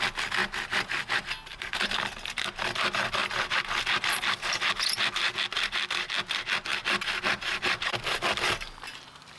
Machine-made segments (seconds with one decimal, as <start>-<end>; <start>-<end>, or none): none